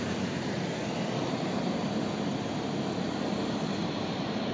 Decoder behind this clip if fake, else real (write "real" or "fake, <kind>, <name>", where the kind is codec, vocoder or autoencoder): real